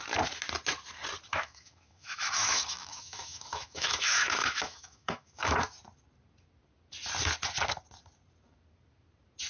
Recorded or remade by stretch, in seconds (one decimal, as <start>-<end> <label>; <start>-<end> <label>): 0.0-1.3 recorded; 1.3-5.6 remade; 5.6-9.5 recorded

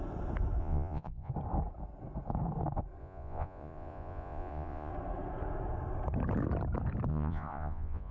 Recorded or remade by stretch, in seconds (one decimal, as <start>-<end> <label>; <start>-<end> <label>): 0.0-0.6 recorded; 0.6-1.3 remade; 1.3-3.0 recorded; 3.0-4.9 remade; 4.9-7.1 recorded; 7.1-8.1 remade